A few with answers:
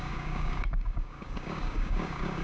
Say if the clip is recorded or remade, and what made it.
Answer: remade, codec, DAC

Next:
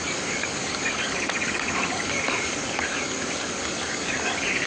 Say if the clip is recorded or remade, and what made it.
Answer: remade, codec, DAC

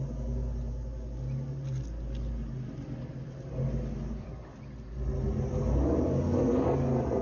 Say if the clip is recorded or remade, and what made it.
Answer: recorded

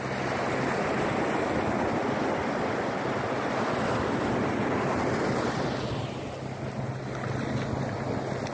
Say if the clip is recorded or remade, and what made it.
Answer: recorded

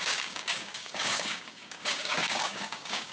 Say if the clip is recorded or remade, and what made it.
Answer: remade, codec, DAC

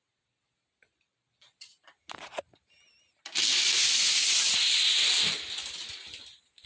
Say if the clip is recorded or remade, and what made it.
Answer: recorded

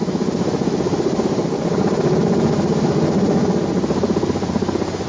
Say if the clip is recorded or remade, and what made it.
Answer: recorded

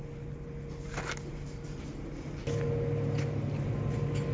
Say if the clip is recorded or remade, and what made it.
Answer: recorded